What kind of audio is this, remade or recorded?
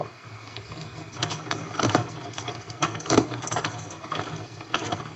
remade